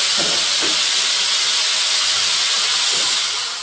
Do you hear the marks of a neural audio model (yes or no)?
no